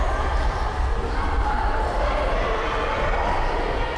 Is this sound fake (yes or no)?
no